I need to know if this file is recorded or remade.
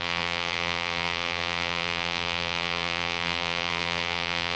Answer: remade